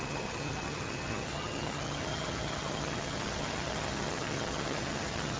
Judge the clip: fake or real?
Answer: fake